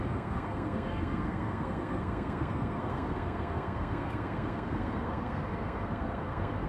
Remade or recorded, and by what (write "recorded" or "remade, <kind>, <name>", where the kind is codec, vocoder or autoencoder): remade, codec, SNAC